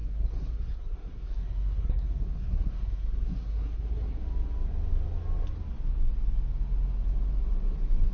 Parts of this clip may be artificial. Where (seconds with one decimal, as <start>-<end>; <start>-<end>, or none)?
0.0-4.2